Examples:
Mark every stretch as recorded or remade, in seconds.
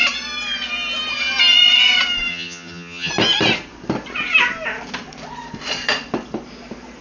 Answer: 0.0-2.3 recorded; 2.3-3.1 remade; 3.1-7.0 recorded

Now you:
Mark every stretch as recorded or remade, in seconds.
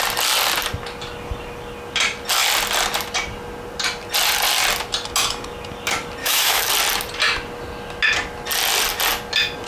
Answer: 0.0-6.2 recorded; 6.2-6.7 remade; 6.7-9.7 recorded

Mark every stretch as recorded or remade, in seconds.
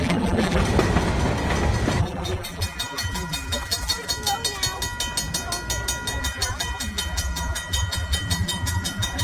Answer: 0.0-0.6 remade; 0.6-2.0 recorded; 2.0-4.1 remade; 4.1-6.2 recorded; 6.2-9.2 remade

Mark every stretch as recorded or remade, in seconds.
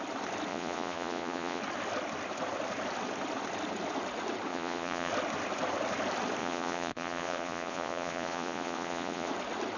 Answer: 0.0-0.5 recorded; 0.5-1.6 remade; 1.6-4.5 recorded; 4.5-5.1 remade; 5.1-6.4 recorded; 6.4-9.3 remade; 9.3-9.8 recorded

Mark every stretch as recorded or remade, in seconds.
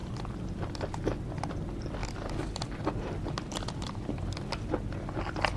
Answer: 0.0-5.6 recorded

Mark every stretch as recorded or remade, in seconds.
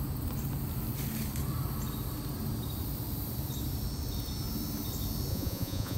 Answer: 0.0-5.3 recorded; 5.3-6.0 remade